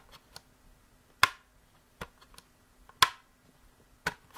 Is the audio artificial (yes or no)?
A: no